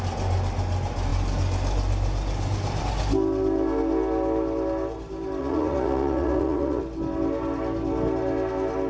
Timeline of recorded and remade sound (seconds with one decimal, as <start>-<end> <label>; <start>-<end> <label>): 0.0-5.4 recorded; 5.4-6.8 remade; 6.8-8.9 recorded